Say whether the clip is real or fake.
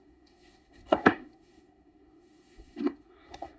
fake